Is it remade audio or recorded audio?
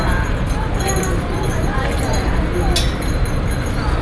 recorded